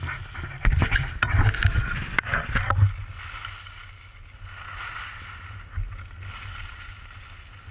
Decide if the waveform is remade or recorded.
recorded